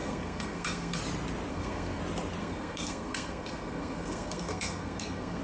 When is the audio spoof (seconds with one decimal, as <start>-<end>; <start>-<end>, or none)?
0.0-1.0; 1.5-2.0; 2.4-5.4